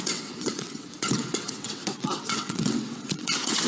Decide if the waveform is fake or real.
fake